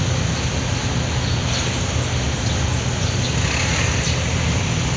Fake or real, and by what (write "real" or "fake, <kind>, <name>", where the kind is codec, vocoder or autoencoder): real